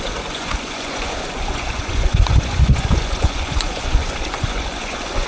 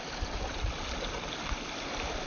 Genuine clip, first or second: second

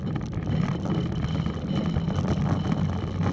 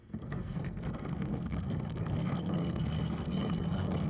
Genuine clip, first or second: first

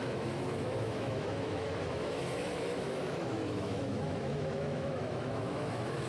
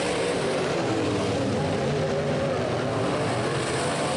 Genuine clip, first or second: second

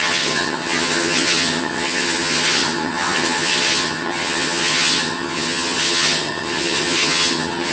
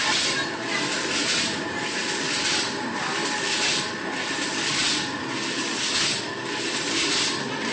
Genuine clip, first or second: second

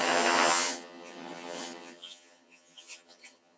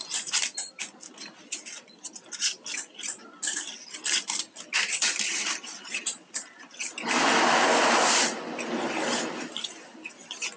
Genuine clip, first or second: second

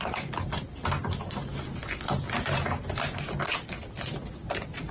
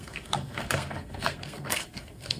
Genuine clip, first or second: first